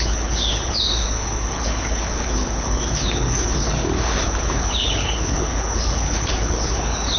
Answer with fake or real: fake